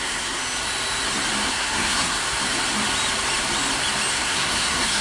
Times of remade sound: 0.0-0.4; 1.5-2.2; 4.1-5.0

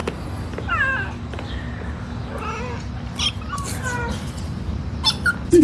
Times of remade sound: none

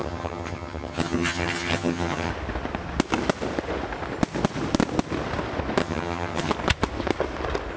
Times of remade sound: 0.0-2.3; 5.8-6.5

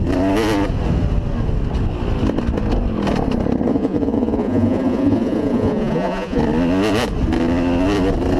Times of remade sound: 3.7-6.4

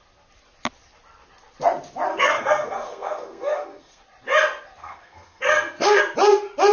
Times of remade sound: 2.1-4.0; 4.8-6.0